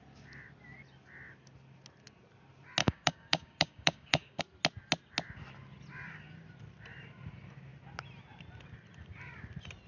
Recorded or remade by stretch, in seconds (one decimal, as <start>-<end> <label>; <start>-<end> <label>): 0.0-2.8 recorded; 2.8-4.4 remade; 4.4-9.9 recorded